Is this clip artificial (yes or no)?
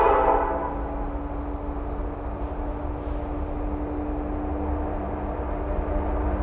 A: no